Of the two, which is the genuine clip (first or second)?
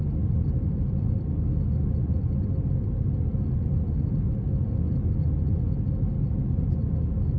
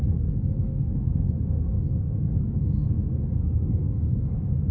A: first